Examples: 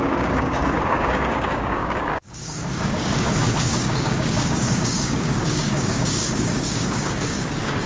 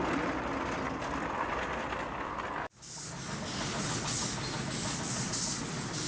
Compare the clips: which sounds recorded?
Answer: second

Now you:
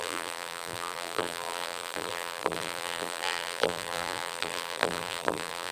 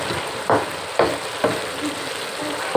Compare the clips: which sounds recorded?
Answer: second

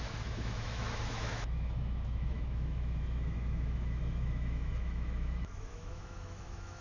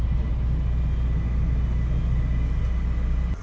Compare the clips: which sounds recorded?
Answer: second